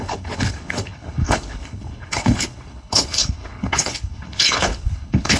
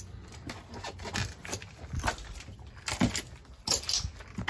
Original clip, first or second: second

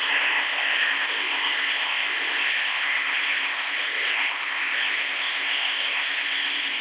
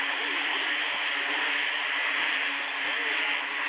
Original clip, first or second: second